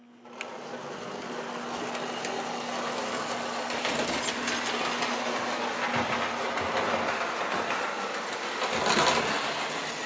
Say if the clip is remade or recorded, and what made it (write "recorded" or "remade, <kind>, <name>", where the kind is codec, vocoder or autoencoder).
recorded